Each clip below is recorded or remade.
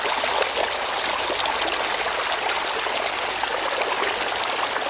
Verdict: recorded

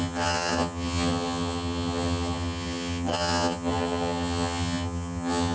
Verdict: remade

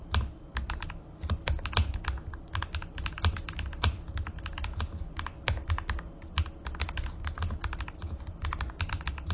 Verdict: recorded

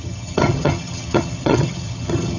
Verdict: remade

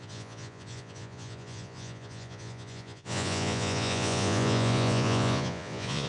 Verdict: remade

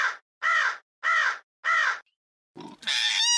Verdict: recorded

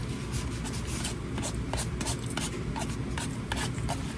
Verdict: recorded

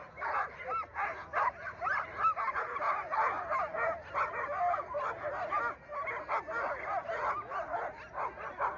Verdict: recorded